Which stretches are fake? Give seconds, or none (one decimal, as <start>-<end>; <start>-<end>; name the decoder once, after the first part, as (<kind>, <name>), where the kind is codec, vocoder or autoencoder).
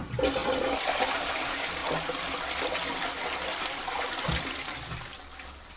0.0-0.4 (vocoder, BigVGAN v2); 1.0-1.8; 3.4-5.8